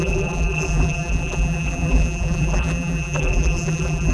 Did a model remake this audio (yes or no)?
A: yes